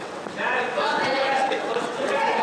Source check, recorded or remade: remade